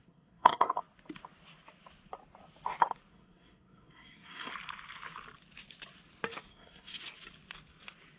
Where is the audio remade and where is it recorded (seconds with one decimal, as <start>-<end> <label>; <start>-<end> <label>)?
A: 0.0-0.8 remade; 0.8-3.1 recorded; 3.1-4.5 remade; 4.5-6.5 recorded; 6.5-7.0 remade; 7.0-8.2 recorded